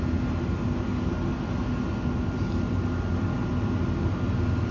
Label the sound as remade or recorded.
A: recorded